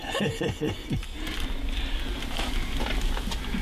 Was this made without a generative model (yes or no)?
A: yes